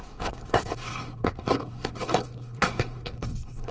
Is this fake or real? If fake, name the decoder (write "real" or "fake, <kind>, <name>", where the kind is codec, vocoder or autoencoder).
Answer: fake, codec, SNAC